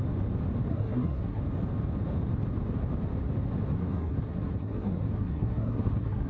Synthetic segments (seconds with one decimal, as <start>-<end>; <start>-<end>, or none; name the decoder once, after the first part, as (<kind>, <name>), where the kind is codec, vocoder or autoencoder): 0.7-1.4 (codec, SNAC); 3.8-6.3